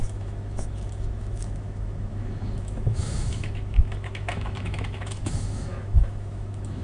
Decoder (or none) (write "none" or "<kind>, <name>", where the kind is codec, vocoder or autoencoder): autoencoder, DAC-VAE